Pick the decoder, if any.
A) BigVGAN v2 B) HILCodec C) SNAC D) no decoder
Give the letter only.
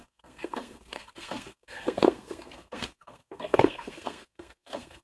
C